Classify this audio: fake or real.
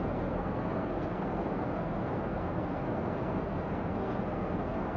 fake